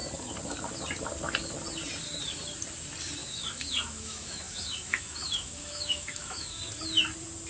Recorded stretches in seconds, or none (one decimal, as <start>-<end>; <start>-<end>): 0.0-3.2; 6.6-7.5